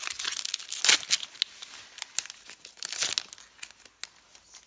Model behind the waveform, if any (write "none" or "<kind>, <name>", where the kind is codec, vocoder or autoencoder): none